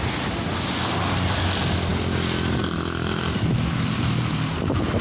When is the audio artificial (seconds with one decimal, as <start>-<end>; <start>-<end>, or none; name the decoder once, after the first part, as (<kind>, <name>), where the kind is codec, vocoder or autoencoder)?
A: none